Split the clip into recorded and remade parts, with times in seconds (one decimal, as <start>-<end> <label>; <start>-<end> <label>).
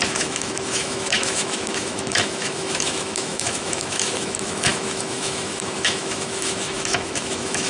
0.0-7.7 remade